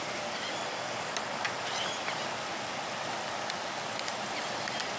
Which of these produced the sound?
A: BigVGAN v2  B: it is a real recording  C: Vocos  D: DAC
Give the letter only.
B